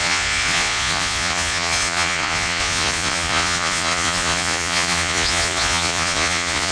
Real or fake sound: fake